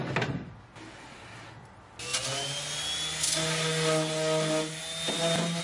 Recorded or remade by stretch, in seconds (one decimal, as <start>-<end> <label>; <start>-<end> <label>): 0.0-5.6 recorded